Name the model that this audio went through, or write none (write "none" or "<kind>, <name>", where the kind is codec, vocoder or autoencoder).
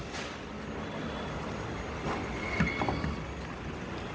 none